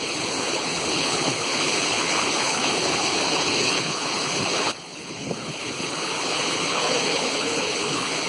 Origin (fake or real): fake